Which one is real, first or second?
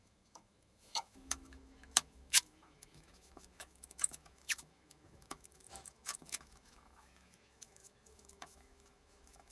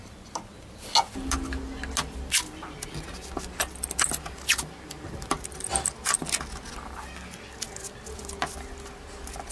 second